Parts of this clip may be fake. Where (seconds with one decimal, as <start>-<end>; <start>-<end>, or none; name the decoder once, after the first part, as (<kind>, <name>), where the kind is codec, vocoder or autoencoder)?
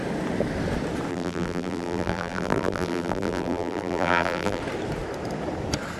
1.1-4.6 (vocoder, BigVGAN v2)